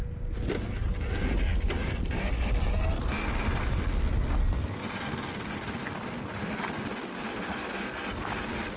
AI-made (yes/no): no